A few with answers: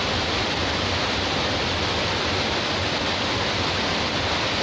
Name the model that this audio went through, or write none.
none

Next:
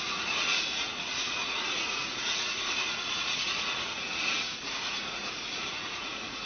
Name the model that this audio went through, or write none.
vocoder, Vocos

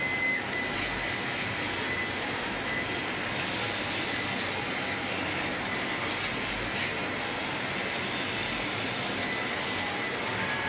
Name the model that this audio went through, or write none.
none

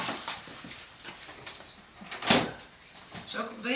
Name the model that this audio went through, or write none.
vocoder, BigVGAN v2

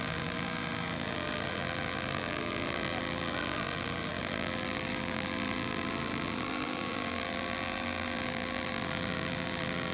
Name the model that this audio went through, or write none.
vocoder, BigVGAN v2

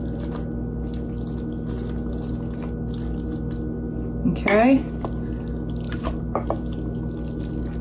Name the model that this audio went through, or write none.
none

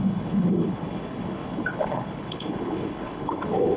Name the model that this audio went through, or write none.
codec, HILCodec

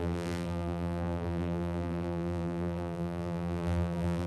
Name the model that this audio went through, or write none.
vocoder, BigVGAN v2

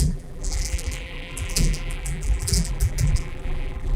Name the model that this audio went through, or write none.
vocoder, BigVGAN v2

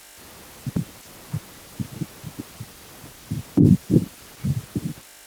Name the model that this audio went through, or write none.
none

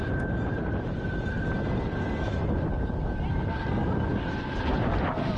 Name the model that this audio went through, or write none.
none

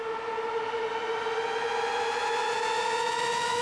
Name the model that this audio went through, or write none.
none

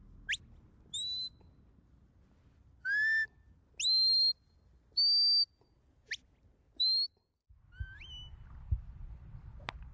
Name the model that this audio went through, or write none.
none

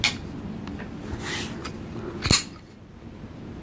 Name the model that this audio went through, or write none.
none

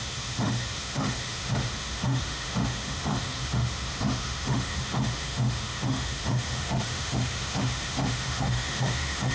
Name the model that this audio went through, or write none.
autoencoder, DAC-VAE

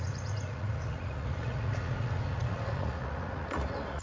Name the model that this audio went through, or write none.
vocoder, Vocos